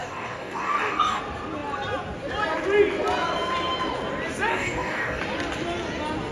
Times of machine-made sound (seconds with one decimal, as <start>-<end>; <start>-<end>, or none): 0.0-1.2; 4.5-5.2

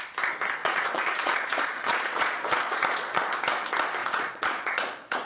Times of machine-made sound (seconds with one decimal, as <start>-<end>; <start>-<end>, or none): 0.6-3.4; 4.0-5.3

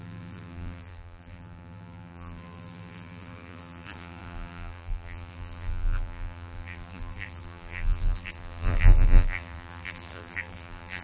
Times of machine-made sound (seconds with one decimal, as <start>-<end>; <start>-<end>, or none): 0.0-11.0